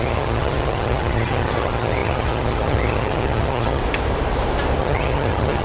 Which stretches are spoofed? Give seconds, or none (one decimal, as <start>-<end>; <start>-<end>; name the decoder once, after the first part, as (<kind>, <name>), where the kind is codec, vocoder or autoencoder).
0.0-3.8 (vocoder, HiFi-GAN); 4.8-5.6